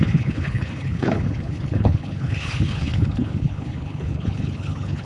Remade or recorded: remade